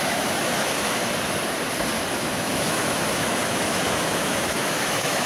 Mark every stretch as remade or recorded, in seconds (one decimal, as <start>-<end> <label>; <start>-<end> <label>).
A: 0.0-1.0 remade; 1.0-2.1 recorded; 2.1-5.3 remade

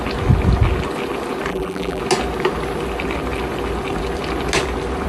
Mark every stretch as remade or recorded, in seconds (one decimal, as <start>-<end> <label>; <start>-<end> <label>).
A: 0.0-1.5 recorded; 1.5-2.0 remade; 2.0-5.1 recorded